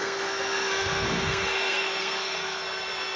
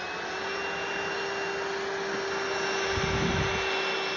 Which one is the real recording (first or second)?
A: second